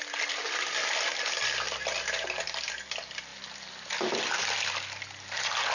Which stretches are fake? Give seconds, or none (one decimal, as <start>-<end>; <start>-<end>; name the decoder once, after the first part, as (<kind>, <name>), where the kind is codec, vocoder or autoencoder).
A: none